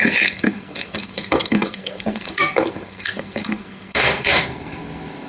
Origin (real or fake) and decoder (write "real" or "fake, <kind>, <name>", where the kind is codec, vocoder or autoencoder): fake, codec, SNAC